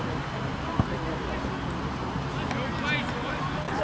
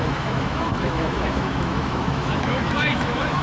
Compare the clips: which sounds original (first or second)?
first